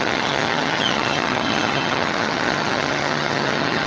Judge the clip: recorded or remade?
remade